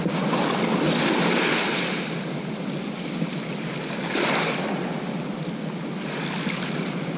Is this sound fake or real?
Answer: real